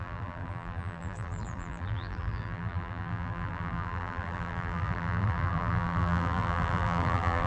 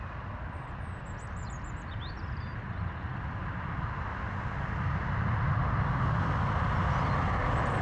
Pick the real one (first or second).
second